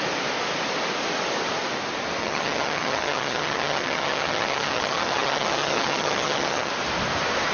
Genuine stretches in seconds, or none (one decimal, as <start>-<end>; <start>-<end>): 0.0-2.2; 6.7-7.5